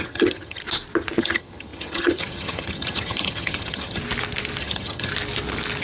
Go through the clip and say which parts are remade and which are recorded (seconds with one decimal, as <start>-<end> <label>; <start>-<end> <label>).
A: 0.0-0.6 remade; 0.6-1.2 recorded; 1.2-4.0 remade; 4.0-4.6 recorded; 4.6-5.1 remade; 5.1-5.8 recorded